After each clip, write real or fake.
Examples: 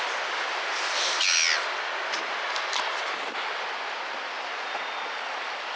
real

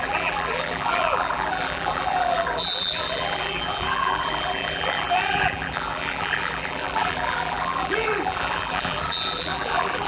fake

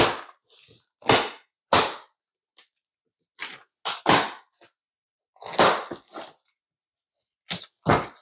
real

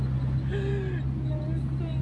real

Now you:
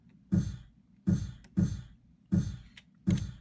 real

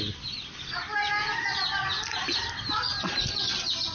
real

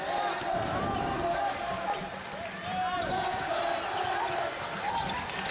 real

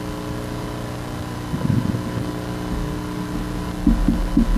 real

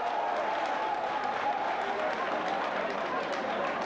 real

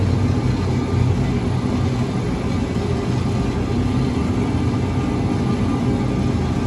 real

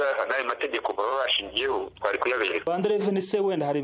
fake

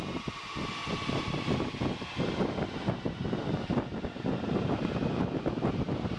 real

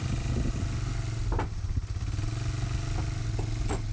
real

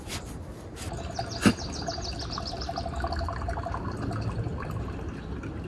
real